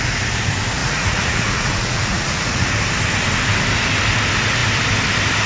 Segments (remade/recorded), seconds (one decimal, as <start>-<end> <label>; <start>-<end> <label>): 0.0-0.8 recorded; 0.8-2.7 remade; 2.7-5.5 recorded